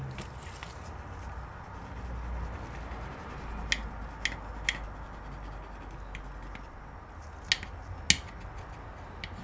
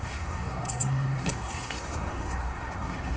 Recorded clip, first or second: first